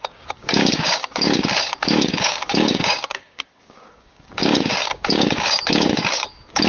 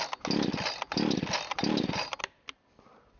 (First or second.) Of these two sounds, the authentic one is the second